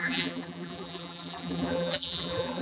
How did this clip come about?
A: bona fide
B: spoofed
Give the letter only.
B